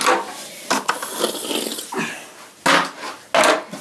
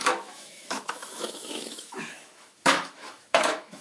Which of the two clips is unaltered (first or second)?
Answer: first